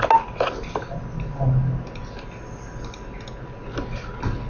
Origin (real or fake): real